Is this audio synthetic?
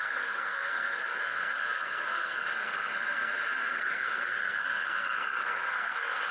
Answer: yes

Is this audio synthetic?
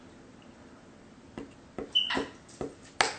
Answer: no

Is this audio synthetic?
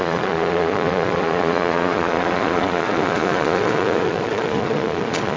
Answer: yes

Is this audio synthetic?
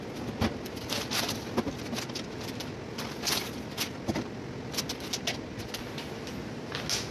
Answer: no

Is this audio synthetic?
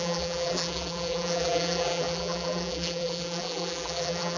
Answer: yes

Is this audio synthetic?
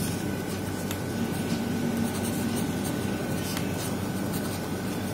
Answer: no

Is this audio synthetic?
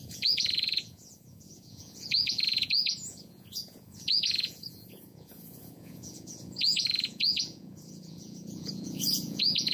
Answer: yes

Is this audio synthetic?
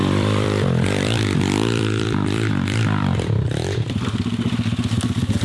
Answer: yes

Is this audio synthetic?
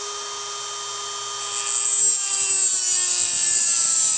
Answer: no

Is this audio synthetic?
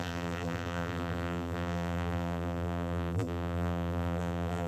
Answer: yes